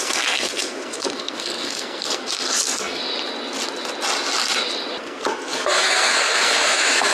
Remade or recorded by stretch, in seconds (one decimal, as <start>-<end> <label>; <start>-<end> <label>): 0.0-3.0 remade; 3.0-5.0 recorded; 5.0-7.1 remade